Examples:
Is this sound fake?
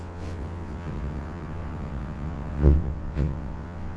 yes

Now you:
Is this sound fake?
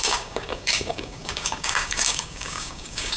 yes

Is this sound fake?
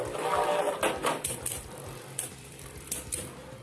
yes